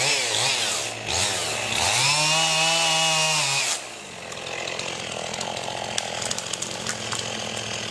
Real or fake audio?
real